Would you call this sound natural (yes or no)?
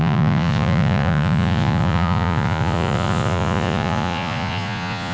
no